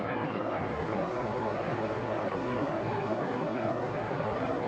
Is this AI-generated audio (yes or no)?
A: yes